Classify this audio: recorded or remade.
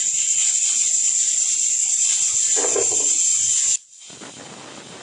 recorded